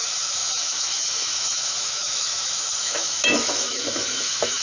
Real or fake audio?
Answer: fake